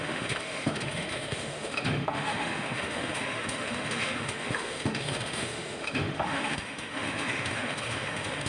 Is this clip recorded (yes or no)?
no